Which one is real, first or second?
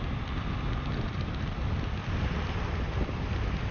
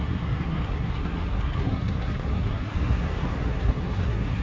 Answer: first